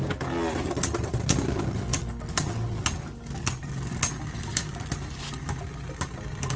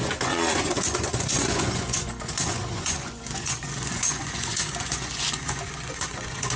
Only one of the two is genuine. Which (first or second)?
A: first